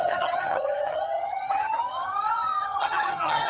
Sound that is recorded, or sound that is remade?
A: remade